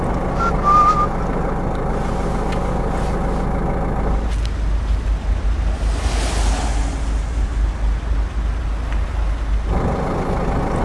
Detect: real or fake real